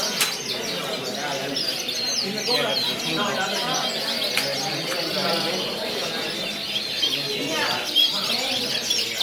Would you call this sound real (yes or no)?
yes